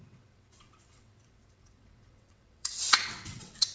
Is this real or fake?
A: fake